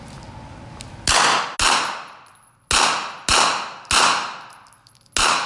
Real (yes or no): yes